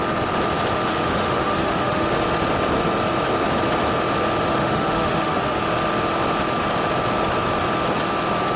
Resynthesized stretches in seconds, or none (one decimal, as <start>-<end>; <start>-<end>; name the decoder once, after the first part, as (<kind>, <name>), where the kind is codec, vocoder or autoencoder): 0.9-2.1 (autoencoder, DAC-VAE); 4.5-5.6